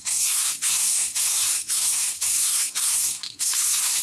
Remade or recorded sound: remade